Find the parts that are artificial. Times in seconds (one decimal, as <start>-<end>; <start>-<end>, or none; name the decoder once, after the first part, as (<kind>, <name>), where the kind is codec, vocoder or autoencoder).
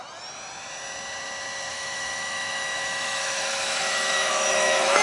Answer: 1.7-5.0 (autoencoder, DAC-VAE)